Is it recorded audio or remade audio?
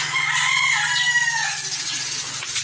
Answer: recorded